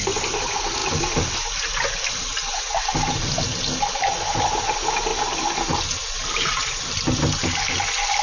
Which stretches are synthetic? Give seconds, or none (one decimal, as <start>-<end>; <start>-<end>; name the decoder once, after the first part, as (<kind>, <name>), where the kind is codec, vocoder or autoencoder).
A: none